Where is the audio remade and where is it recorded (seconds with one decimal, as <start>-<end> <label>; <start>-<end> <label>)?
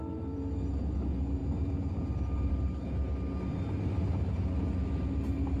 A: 0.0-5.6 recorded